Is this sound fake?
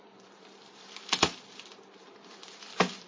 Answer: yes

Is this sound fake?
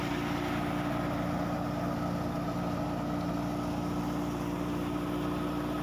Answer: no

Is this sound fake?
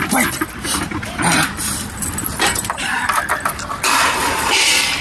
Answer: yes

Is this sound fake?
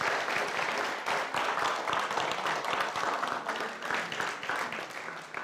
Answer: no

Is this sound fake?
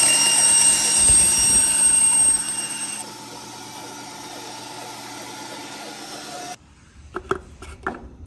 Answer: no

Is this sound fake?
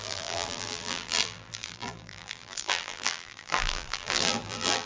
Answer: yes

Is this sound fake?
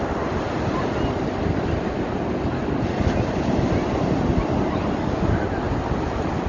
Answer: yes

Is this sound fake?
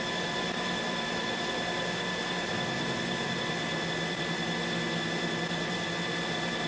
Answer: yes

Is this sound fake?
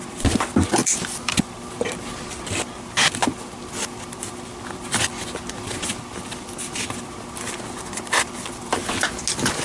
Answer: no